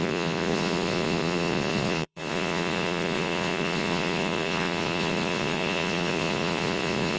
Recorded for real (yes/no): no